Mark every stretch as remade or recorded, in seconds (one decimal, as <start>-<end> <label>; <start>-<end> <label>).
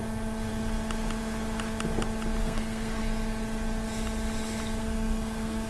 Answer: 0.0-2.4 recorded; 2.4-3.0 remade; 3.0-4.8 recorded; 4.8-5.7 remade